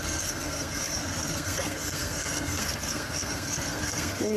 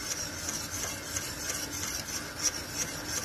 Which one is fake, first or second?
first